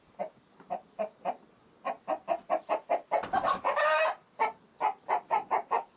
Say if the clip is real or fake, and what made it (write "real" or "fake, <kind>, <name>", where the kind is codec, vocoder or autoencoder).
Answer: real